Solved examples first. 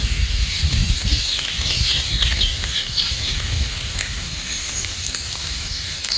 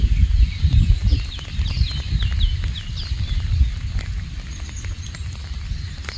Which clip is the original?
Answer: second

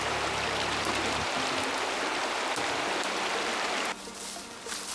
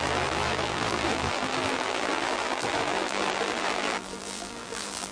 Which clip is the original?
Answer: first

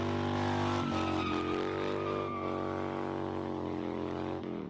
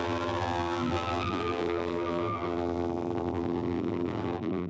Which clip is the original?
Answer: first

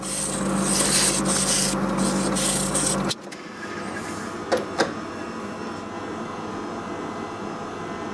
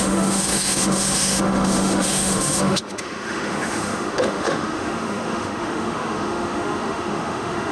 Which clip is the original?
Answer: first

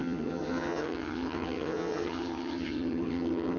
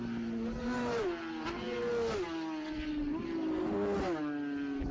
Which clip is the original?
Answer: second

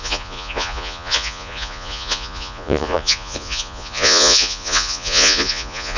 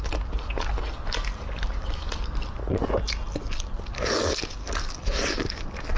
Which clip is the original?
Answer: second